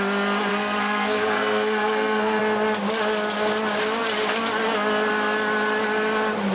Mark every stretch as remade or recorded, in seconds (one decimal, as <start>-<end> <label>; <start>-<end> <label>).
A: 0.0-0.5 recorded; 0.5-2.4 remade; 2.4-6.5 recorded